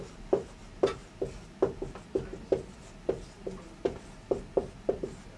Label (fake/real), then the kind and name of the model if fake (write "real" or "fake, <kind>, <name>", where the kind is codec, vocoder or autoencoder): real